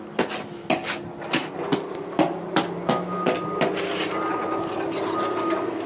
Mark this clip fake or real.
real